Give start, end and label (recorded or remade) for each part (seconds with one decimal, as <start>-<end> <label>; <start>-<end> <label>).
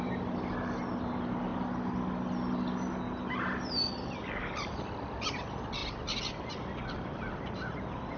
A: 0.0-8.2 recorded